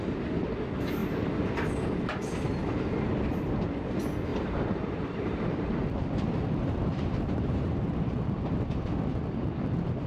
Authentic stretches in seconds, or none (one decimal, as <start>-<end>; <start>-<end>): 0.0-4.3; 7.7-10.1